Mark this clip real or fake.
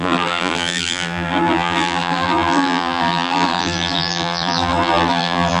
fake